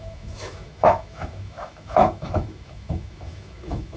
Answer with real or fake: fake